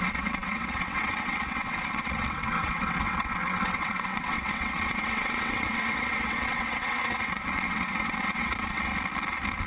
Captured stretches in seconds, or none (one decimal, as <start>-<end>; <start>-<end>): 8.9-9.7